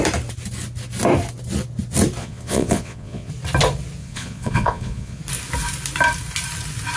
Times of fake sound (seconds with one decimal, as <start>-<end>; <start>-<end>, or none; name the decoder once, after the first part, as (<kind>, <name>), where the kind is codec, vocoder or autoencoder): 2.2-3.3 (vocoder, Vocos); 4.0-5.2